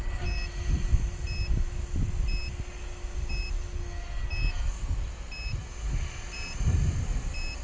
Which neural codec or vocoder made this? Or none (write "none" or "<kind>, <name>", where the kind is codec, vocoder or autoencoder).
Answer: none